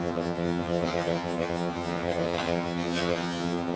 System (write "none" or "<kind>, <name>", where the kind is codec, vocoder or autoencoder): vocoder, HiFi-GAN